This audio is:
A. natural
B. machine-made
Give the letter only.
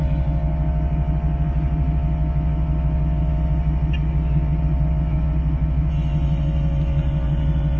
A